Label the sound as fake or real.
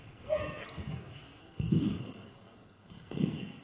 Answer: fake